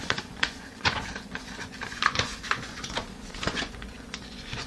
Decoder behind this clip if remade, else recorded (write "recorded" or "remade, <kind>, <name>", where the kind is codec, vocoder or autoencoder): remade, vocoder, Vocos